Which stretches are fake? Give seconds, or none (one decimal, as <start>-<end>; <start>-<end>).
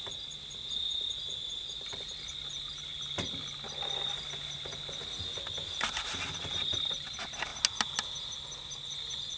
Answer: none